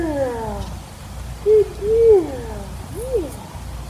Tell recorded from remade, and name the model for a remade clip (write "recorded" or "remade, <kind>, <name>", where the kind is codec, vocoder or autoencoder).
recorded